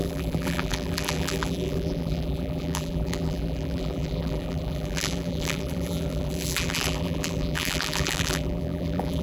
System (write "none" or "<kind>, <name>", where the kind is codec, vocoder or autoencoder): vocoder, BigVGAN v2